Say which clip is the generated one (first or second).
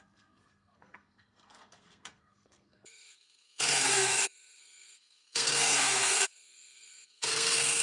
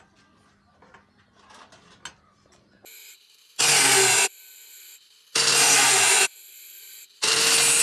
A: first